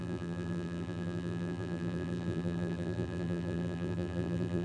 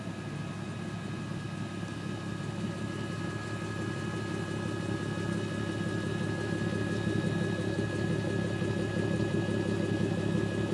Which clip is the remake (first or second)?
first